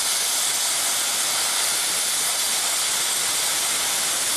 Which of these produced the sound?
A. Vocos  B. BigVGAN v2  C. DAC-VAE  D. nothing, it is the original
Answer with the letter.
D